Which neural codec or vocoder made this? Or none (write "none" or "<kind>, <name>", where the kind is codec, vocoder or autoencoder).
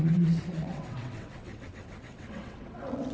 vocoder, WaveNeXt